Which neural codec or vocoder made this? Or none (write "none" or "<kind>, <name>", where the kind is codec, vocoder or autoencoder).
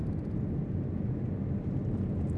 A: none